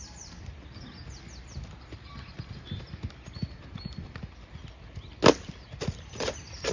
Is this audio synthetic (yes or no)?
no